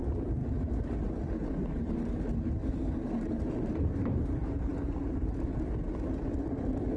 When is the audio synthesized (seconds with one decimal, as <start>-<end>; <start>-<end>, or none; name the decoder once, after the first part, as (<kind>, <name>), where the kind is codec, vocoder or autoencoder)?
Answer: none